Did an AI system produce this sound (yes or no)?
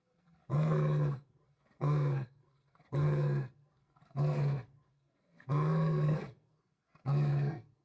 yes